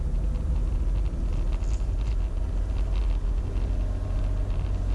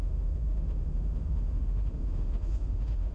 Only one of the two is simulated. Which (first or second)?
second